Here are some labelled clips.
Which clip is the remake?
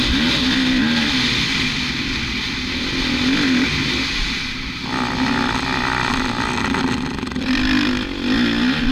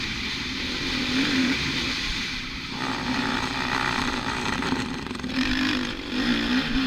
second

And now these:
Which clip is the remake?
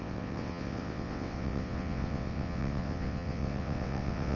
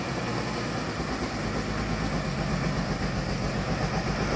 first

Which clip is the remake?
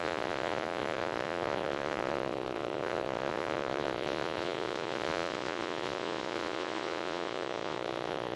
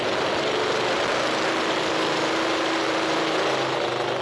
first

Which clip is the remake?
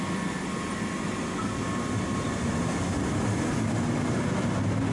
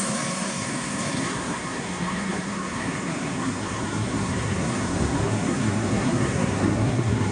second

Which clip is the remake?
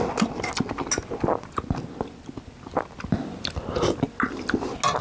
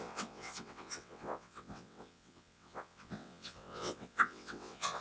second